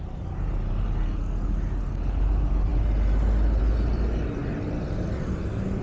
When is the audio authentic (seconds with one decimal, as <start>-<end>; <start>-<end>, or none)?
0.0-5.8